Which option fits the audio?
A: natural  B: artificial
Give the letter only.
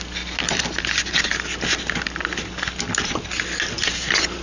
A